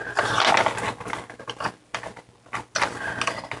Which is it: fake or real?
real